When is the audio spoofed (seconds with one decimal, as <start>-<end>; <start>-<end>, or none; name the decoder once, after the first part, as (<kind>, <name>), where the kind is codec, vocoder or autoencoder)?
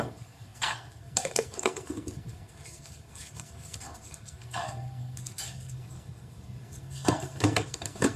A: 0.0-8.2 (codec, SNAC)